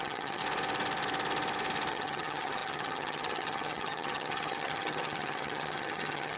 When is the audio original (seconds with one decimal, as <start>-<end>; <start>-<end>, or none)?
0.4-1.9